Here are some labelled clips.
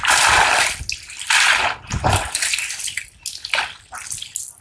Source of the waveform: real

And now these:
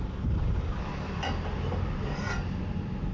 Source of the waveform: real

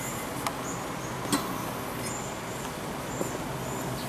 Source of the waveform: real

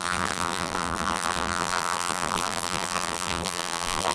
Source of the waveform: fake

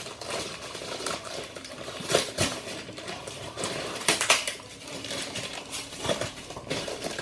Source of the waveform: fake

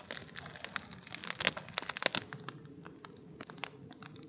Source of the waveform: real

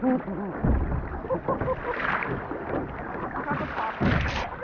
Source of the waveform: real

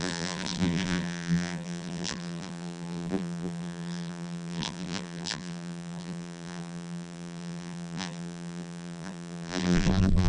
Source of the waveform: fake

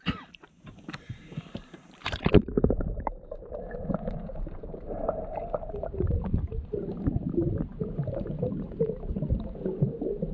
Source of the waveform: fake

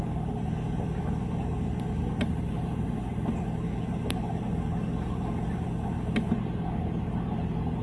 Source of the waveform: real